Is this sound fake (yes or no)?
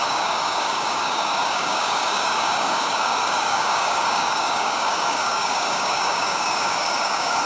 yes